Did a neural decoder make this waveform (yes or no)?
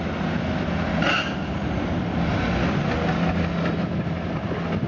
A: no